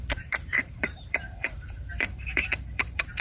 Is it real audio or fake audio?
fake